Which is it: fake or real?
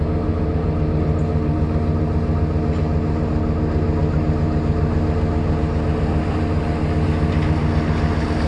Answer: real